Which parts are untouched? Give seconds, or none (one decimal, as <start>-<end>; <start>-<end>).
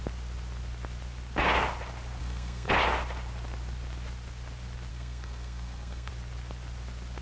0.0-2.2; 2.7-4.9; 6.1-7.2